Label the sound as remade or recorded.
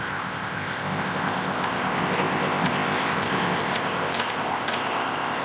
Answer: remade